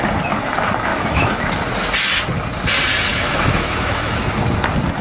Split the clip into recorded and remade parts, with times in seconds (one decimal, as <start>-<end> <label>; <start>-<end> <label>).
0.0-0.9 recorded; 0.9-1.5 remade; 1.5-3.1 recorded; 3.1-4.2 remade; 4.2-5.0 recorded